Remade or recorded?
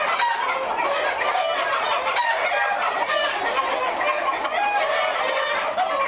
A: recorded